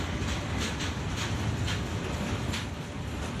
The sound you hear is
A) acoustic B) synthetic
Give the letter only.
A